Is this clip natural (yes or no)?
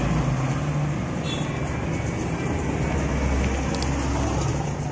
yes